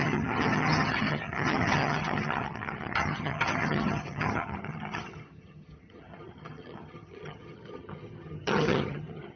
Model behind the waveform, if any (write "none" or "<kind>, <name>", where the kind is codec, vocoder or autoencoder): vocoder, HiFi-GAN